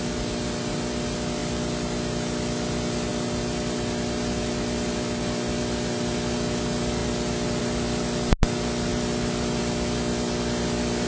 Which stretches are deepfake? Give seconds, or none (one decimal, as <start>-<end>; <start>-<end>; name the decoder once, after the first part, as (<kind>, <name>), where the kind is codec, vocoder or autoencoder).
none